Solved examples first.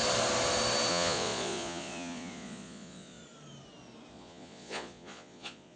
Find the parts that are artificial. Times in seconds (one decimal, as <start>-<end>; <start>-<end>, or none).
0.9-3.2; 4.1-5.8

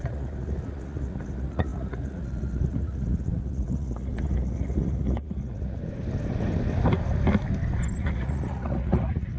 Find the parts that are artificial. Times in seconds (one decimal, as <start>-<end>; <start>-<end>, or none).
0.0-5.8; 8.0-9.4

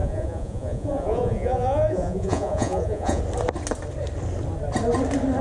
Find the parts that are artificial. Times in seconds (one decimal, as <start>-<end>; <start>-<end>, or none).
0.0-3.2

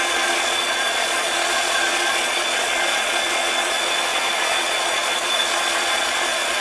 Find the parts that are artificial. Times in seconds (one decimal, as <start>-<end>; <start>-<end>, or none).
0.0-6.6